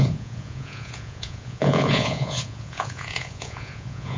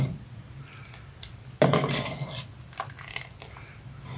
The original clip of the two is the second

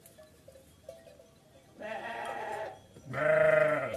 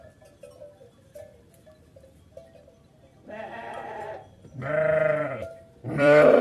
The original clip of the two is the first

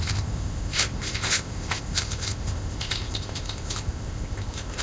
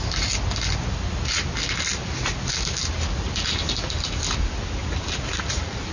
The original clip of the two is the second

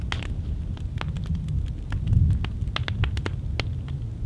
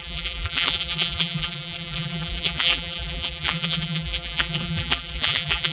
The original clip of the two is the first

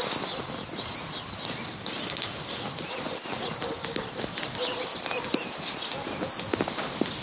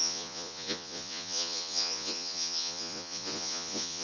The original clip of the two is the first